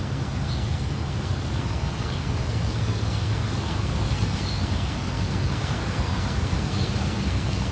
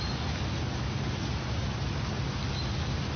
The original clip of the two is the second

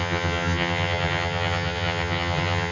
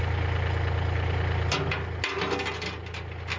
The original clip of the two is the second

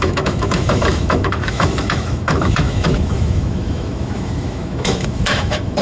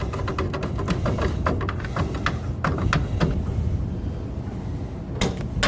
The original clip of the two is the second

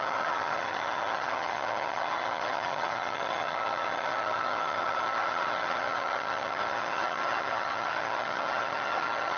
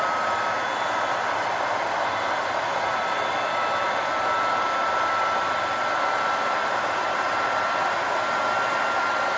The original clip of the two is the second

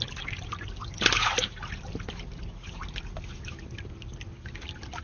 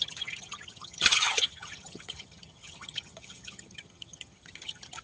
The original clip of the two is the first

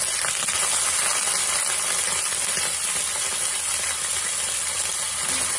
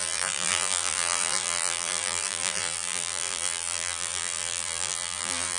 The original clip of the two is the first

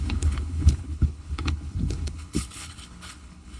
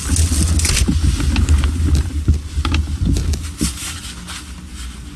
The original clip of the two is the second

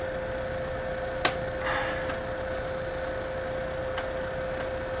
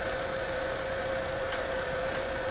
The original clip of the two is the first